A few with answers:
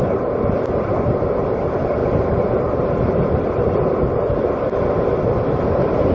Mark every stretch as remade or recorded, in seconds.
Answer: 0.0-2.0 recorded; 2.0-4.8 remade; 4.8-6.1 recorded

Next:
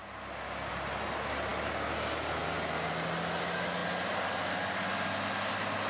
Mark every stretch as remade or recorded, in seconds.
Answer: 0.0-5.9 recorded